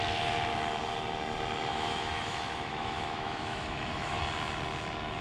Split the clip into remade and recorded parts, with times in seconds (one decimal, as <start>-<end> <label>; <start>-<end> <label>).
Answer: 0.0-1.7 recorded; 1.7-4.2 remade; 4.2-5.2 recorded